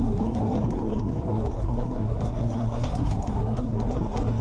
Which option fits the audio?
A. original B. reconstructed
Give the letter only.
B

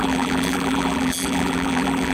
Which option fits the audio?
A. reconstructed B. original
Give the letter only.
A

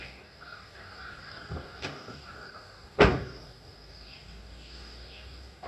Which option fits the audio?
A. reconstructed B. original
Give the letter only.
A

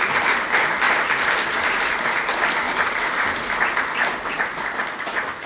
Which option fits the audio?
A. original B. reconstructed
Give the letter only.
A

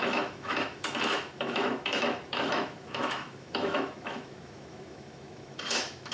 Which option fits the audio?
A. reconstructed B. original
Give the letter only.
A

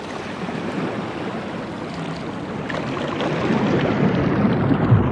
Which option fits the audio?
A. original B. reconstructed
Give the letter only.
A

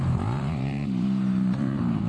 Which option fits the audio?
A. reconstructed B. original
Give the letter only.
A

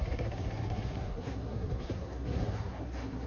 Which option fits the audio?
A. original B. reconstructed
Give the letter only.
B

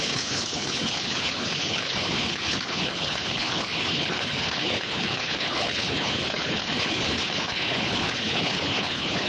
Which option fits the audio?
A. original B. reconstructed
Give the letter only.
B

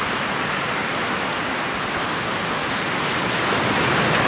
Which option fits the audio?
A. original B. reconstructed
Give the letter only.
A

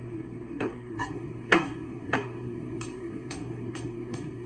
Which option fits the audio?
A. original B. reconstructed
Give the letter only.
B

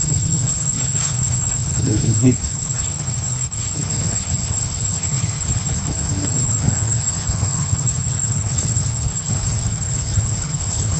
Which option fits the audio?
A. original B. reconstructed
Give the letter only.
B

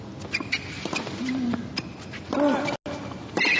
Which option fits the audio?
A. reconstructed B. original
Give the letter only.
B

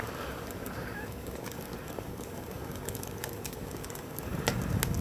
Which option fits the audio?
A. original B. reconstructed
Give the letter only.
B